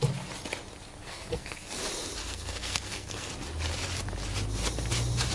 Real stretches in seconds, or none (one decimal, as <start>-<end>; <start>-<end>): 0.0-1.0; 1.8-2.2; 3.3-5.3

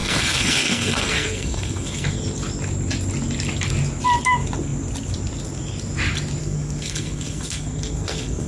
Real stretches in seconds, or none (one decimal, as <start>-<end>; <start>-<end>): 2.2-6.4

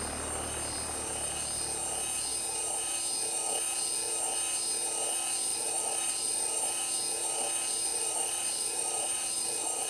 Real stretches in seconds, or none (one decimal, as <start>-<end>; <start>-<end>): 0.0-5.5; 6.6-7.9